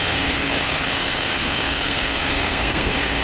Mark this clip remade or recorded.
remade